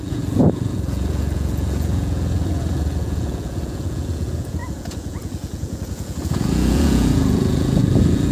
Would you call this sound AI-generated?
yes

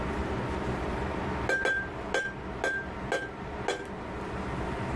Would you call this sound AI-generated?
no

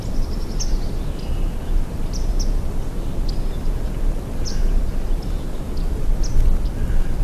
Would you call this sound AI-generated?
no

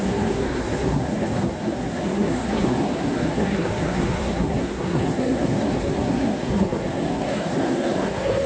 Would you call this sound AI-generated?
yes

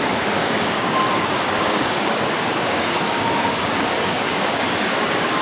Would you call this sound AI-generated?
yes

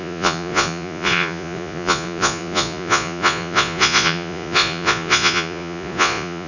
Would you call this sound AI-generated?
yes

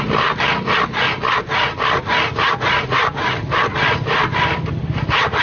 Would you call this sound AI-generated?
no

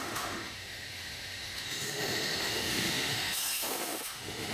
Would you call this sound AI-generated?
yes